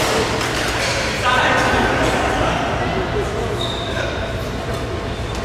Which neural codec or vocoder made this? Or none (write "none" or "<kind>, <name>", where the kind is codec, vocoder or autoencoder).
none